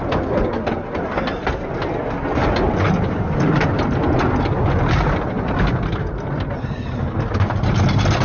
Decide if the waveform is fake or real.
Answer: real